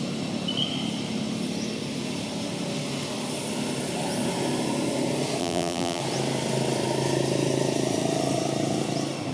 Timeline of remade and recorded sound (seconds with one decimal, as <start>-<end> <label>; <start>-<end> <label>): 0.0-5.4 recorded; 5.4-6.0 remade; 6.0-9.3 recorded